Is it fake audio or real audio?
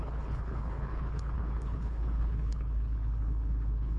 fake